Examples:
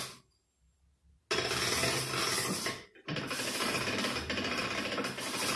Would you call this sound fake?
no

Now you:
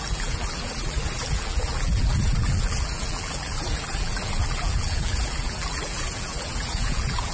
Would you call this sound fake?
yes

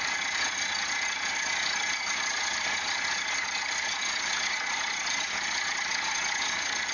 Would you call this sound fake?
no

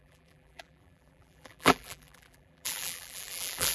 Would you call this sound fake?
yes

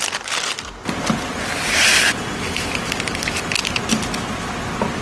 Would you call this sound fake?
no